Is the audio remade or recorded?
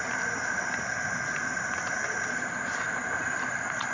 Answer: recorded